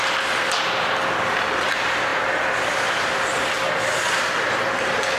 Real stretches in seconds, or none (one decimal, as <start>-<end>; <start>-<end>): 0.0-5.2